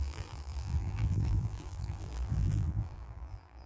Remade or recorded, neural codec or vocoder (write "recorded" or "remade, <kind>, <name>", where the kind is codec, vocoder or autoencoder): remade, vocoder, BigVGAN v2